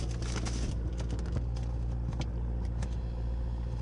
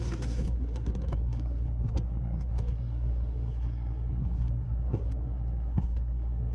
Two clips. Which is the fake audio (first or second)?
second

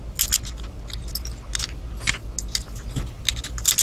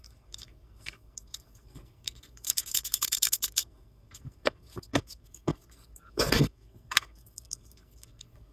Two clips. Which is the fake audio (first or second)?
second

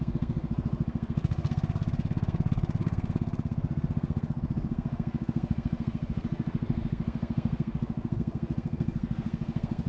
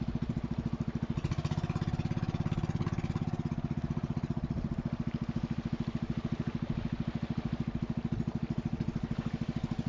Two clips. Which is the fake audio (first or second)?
first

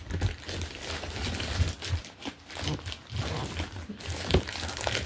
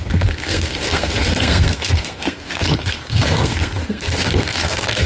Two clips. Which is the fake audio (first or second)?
second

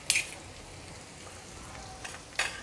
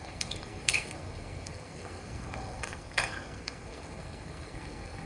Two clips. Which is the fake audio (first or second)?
second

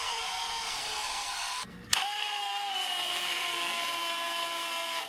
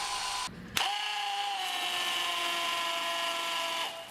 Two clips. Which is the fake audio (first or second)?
first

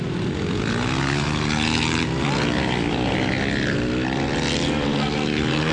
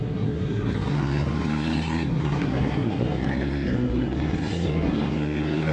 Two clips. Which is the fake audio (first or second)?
second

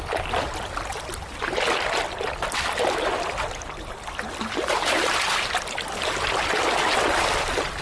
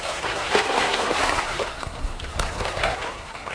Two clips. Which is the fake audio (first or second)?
second